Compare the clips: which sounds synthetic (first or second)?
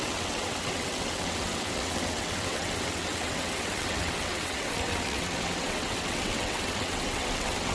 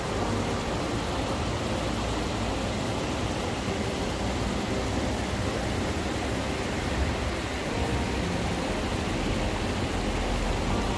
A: first